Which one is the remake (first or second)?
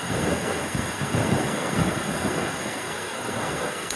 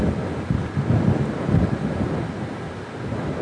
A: first